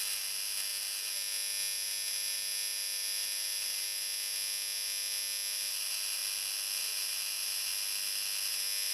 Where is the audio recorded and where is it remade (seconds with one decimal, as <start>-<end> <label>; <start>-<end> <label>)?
0.0-8.9 recorded